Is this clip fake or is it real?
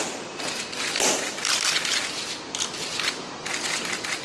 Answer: fake